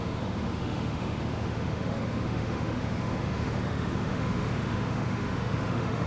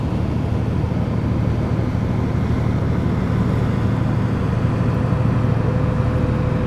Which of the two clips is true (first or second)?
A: second